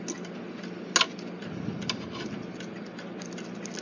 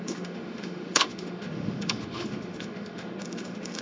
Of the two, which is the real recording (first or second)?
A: first